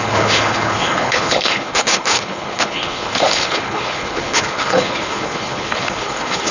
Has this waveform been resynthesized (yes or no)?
yes